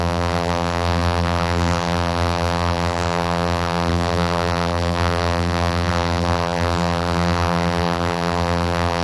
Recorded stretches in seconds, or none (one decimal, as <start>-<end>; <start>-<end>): none